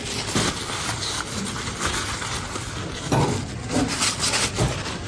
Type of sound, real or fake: real